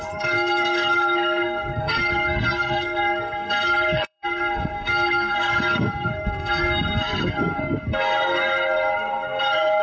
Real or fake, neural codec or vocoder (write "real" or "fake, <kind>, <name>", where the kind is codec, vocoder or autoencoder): fake, codec, SNAC